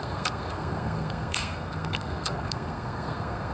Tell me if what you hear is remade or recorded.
remade